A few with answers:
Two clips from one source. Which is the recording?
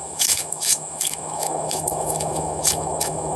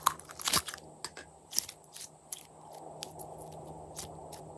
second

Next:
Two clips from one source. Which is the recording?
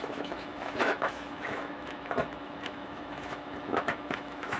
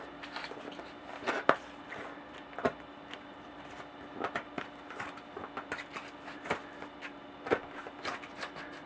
second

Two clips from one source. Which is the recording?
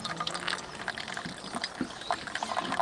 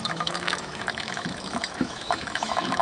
first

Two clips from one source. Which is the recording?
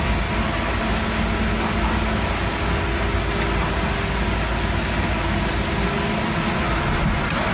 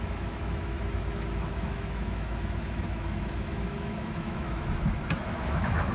first